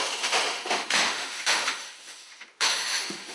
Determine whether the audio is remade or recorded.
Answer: remade